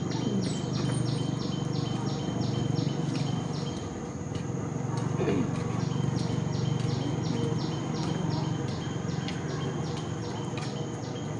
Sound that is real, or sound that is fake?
real